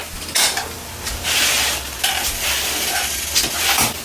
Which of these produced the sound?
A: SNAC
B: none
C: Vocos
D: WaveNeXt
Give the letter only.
B